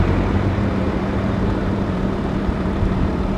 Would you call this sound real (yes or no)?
no